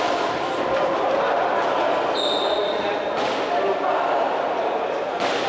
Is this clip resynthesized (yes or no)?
no